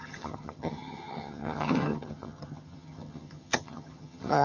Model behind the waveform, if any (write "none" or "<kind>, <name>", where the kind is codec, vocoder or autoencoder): vocoder, HiFi-GAN